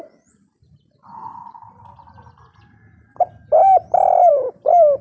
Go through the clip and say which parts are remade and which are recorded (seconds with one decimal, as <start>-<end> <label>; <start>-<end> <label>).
0.0-5.0 recorded